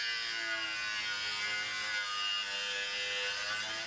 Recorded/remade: recorded